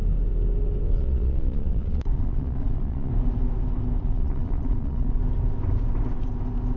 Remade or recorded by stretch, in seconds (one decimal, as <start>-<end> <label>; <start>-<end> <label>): 0.0-0.9 recorded; 0.9-3.1 remade; 3.1-4.0 recorded; 4.0-5.2 remade; 5.2-6.8 recorded